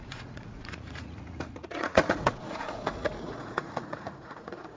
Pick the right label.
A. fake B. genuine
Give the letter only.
A